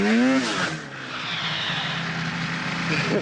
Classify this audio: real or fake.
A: real